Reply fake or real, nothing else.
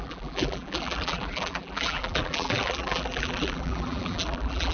fake